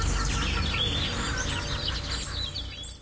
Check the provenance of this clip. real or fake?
real